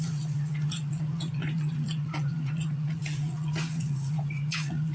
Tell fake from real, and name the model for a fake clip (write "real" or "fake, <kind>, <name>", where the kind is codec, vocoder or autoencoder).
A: fake, vocoder, Vocos